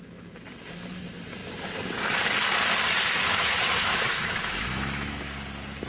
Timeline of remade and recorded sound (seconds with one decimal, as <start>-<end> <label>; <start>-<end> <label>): 0.0-3.3 recorded; 3.3-5.2 remade; 5.2-5.9 recorded